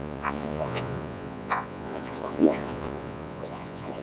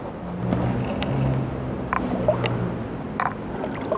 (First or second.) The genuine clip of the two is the second